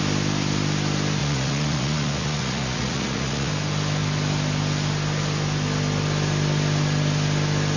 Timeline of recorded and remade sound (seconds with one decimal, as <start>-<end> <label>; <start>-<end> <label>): 0.0-1.2 recorded; 1.2-3.5 remade; 3.5-7.8 recorded